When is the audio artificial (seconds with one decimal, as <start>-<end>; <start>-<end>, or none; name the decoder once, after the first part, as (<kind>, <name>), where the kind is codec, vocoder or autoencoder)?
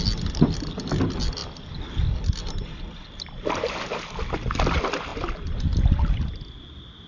none